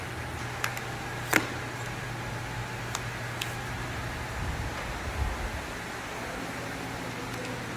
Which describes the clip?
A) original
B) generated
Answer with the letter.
A